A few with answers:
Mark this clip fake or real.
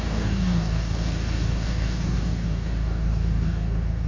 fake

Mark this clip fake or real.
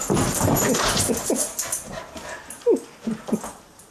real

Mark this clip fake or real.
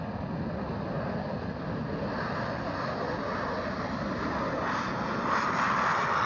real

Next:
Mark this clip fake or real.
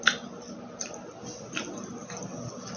real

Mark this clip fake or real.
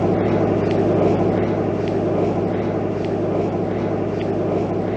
real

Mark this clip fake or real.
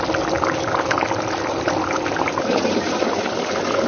real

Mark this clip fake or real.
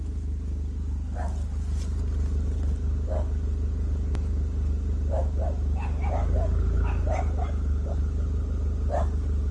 real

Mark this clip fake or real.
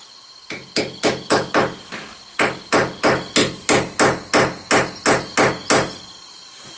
real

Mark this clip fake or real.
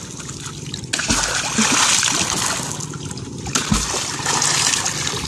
real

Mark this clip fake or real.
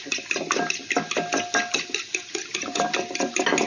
real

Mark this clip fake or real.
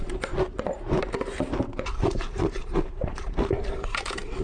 fake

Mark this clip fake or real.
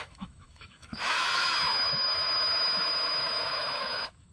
fake